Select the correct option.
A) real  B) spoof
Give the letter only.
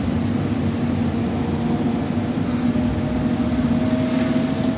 A